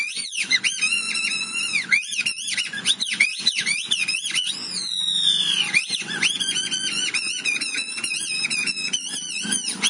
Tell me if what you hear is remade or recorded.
remade